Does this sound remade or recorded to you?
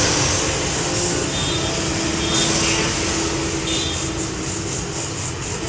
recorded